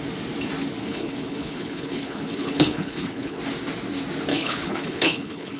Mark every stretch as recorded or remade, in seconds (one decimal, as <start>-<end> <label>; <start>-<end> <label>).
0.0-0.8 recorded; 0.8-3.4 remade; 3.4-4.3 recorded; 4.3-5.6 remade